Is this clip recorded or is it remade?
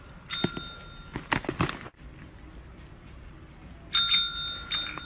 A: recorded